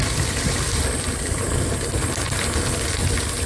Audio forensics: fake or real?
real